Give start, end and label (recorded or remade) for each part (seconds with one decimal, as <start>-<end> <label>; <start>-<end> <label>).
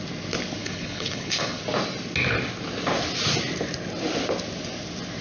0.0-0.6 recorded; 0.6-1.6 remade; 1.6-5.2 recorded